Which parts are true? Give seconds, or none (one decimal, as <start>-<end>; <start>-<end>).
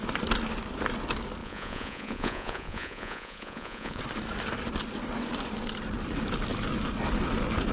0.0-1.4; 4.0-7.7